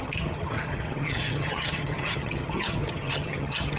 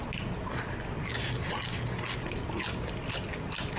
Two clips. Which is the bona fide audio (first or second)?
second